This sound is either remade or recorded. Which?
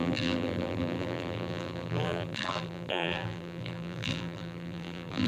remade